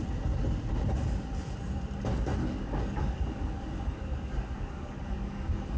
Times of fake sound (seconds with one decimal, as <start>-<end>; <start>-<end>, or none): 2.4-5.8